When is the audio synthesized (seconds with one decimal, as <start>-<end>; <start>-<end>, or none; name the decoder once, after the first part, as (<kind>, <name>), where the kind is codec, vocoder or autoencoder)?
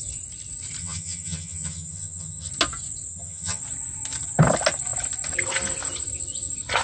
0.8-2.5 (vocoder, HiFi-GAN); 3.1-3.6